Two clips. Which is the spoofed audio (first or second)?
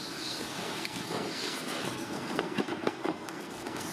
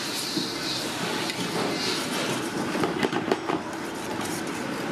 first